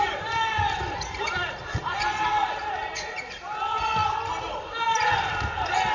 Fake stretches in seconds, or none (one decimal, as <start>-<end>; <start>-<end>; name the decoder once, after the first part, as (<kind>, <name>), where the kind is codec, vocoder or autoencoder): 0.0-2.8 (vocoder, BigVGAN v2); 3.6-4.0; 4.7-5.9